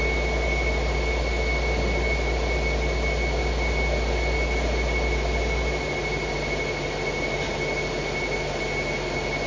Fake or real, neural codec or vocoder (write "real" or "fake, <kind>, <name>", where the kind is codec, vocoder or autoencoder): real